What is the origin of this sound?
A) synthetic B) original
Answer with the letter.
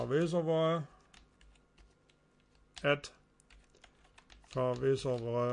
B